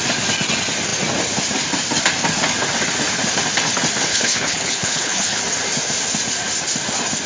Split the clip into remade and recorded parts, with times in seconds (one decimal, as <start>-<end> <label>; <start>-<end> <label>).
0.0-4.1 recorded; 4.1-5.4 remade; 5.4-7.3 recorded